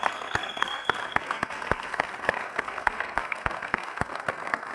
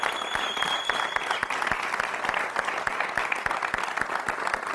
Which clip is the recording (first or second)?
second